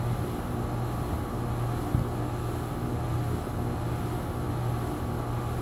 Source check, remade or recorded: recorded